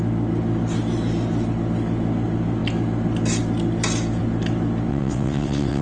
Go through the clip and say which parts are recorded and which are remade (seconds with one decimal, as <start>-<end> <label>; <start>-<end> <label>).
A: 0.0-4.9 recorded; 4.9-5.8 remade